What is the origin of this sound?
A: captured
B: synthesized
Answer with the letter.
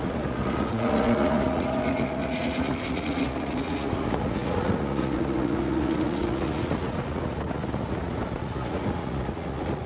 B